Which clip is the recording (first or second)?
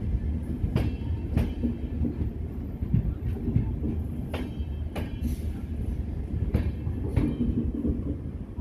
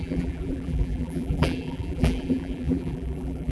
first